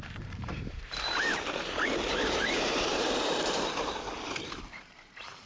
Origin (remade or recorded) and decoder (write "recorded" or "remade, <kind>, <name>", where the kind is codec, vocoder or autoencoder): remade, vocoder, BigVGAN v2